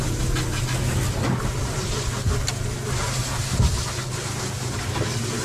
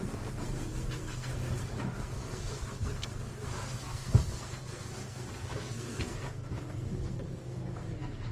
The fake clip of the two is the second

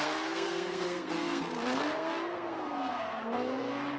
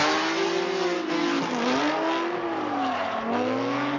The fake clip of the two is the first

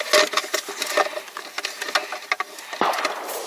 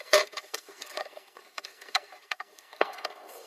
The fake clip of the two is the second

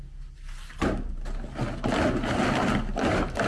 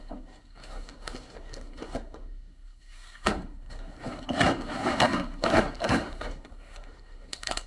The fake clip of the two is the second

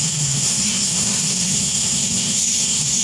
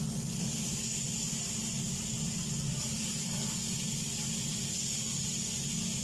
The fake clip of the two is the first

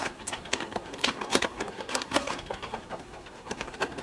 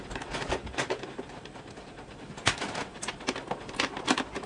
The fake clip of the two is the first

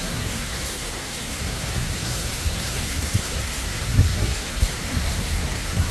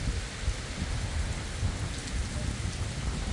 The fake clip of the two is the first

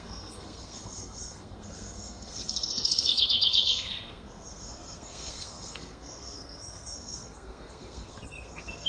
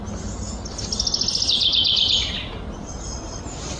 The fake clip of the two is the first